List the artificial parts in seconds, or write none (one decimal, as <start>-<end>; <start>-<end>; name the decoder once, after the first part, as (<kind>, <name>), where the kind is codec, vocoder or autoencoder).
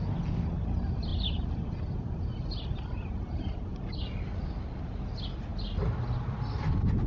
none